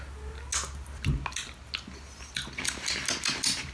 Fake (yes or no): no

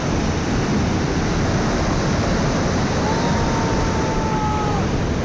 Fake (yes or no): no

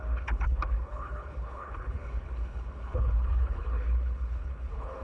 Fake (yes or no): yes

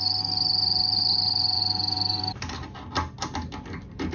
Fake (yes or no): no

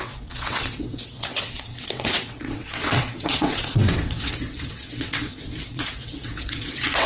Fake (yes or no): yes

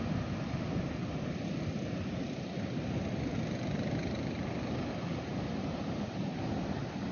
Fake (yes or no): no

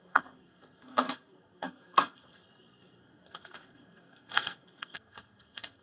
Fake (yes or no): yes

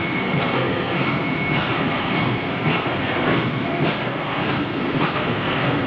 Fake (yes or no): yes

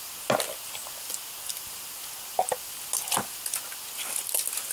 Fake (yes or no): no